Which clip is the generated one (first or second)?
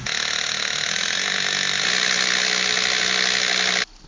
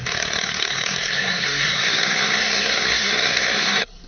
second